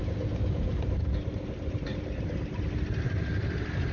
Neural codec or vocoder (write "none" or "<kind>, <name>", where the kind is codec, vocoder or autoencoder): none